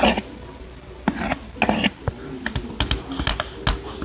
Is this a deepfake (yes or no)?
no